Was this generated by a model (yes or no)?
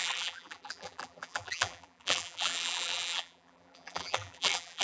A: yes